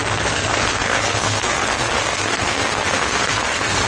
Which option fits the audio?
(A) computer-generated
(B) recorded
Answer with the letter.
A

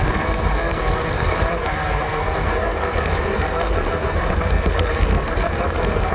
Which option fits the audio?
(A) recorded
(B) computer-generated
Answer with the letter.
B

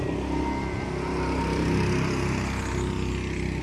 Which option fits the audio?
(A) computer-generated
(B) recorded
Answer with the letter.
B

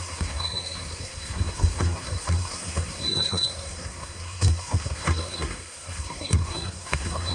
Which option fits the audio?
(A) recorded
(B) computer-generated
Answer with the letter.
B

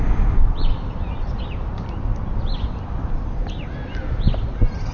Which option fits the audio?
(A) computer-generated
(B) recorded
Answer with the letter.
B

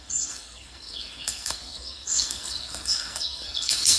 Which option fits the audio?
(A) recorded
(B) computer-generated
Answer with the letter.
B